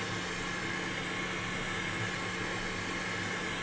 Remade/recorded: recorded